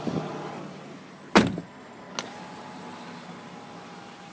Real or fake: real